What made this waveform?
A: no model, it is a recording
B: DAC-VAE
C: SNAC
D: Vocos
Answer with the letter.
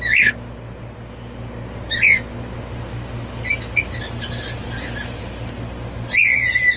A